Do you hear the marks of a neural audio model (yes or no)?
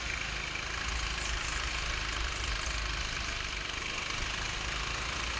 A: no